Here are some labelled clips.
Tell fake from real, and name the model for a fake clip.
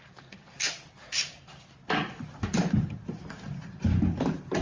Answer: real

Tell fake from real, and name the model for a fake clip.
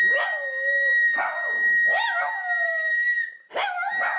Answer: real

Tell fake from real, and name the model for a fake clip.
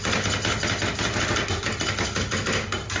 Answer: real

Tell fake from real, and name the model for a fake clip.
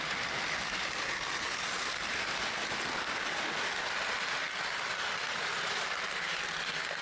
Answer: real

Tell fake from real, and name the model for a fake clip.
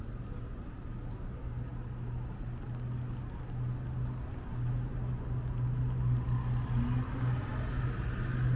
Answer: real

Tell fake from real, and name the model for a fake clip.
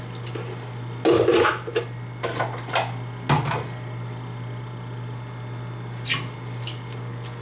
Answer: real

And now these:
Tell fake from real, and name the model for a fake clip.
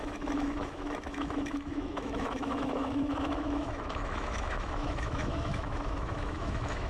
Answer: fake, autoencoder, DAC-VAE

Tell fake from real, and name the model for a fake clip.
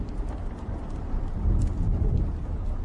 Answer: real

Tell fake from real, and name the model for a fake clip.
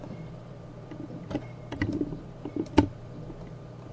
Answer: fake, vocoder, BigVGAN v2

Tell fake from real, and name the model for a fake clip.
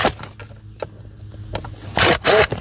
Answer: real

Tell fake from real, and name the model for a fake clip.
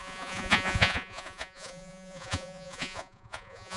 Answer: fake, vocoder, Vocos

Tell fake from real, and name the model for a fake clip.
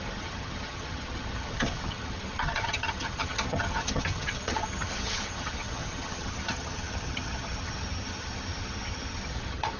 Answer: fake, vocoder, HiFi-GAN